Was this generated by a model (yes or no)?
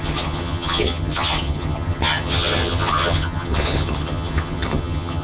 yes